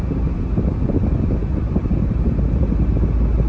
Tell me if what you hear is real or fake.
real